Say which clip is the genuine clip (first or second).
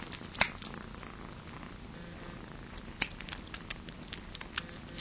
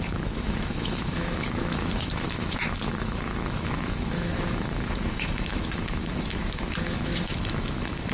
first